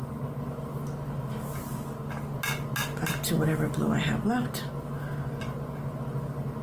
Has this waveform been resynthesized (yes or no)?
no